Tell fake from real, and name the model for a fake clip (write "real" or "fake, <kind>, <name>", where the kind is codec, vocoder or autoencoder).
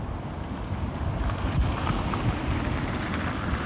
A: fake, vocoder, BigVGAN v2